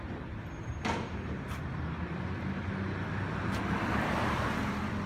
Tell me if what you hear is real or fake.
real